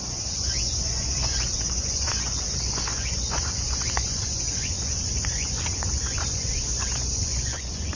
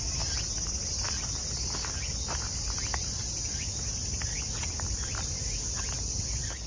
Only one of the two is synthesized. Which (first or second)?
first